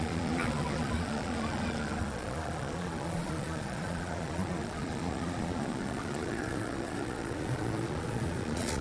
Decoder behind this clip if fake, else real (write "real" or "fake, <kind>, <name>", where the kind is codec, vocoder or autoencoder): fake, vocoder, Vocos